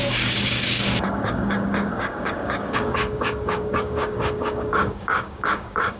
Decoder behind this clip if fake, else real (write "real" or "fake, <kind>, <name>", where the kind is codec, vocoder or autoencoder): fake, codec, DAC